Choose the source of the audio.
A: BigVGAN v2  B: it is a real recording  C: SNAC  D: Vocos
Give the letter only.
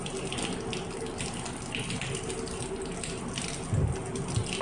B